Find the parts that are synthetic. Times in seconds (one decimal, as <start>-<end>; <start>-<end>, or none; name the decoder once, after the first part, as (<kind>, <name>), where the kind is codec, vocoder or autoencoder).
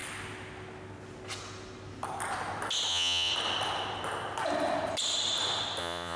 2.9-3.3 (vocoder, Vocos); 5.8-6.2